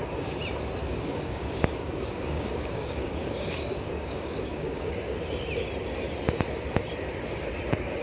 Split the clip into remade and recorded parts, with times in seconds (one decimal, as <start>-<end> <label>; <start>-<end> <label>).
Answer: 0.0-0.8 recorded; 0.8-4.9 remade; 4.9-8.0 recorded